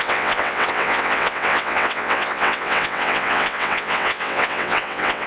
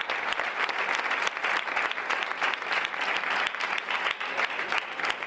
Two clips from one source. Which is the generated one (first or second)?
first